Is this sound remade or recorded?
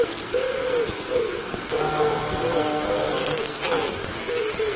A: remade